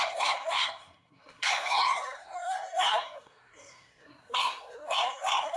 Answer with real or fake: fake